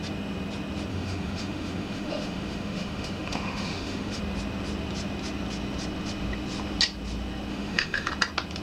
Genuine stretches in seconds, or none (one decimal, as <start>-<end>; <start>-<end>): 0.0-0.9; 4.2-7.5; 8.1-8.6

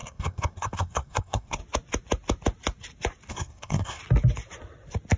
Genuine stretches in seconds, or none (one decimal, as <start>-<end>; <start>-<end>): 1.6-3.3; 4.0-5.2

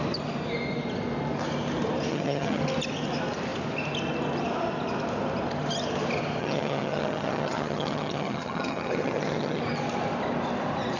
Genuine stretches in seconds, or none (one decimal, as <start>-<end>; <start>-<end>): 0.0-2.1; 2.6-6.4; 9.6-11.0

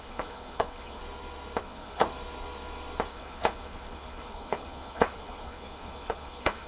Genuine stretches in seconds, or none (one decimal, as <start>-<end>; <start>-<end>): 1.0-1.6; 2.0-3.1

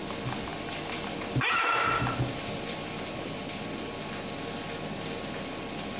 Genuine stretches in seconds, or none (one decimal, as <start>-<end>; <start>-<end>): 0.0-0.5; 4.1-6.0

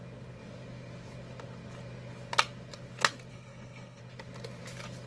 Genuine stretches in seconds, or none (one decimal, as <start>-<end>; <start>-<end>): 0.0-3.3; 4.0-5.1